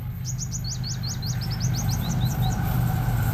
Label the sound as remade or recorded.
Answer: recorded